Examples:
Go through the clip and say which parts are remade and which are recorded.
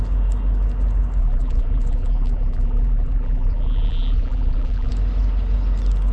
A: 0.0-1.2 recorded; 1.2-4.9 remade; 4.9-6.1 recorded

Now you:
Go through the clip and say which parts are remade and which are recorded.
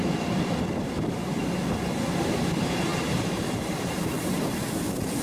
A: 0.0-1.9 recorded; 1.9-5.2 remade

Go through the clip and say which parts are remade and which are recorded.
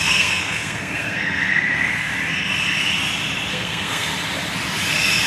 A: 0.0-2.1 remade; 2.1-3.5 recorded; 3.5-4.1 remade; 4.1-5.3 recorded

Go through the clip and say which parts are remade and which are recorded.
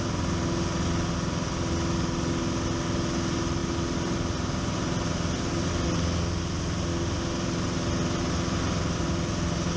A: 0.0-9.8 recorded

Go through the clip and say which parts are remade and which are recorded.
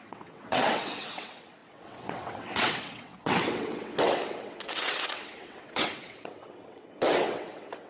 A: 0.0-7.9 remade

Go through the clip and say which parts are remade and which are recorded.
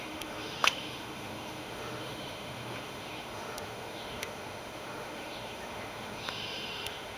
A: 0.0-7.2 remade